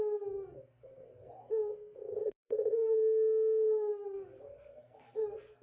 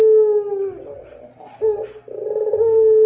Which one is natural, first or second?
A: second